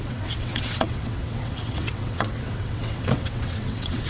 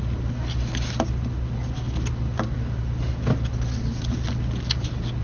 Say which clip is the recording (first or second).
second